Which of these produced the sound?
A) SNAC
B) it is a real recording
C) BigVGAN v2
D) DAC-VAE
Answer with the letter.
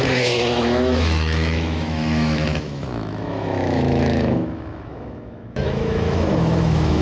D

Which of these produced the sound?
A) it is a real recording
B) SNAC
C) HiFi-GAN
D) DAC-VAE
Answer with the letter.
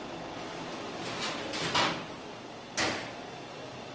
A